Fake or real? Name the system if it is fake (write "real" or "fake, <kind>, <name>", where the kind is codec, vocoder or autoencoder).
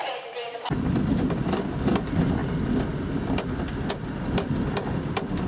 real